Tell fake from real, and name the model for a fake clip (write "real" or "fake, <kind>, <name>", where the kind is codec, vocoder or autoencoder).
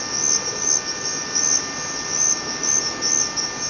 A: real